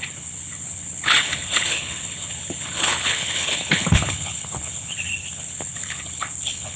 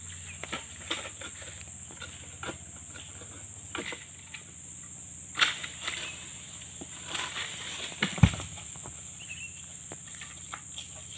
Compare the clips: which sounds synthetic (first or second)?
first